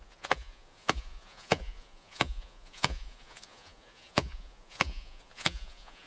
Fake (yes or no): yes